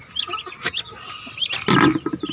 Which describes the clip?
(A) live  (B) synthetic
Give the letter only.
A